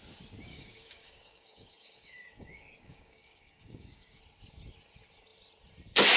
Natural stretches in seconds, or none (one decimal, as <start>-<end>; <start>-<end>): 0.0-0.5; 4.2-6.2